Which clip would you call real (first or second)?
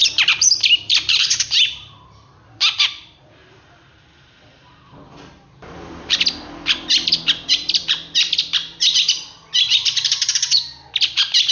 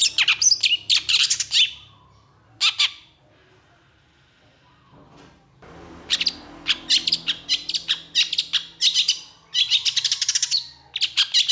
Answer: second